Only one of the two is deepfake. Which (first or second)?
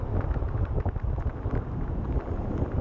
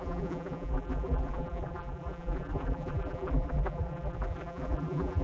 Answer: second